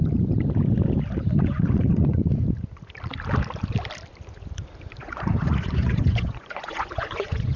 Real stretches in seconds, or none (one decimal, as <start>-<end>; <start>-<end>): 0.0-1.4; 2.3-5.0